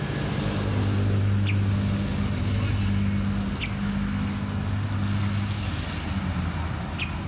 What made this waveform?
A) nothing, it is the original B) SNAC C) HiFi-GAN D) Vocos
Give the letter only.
A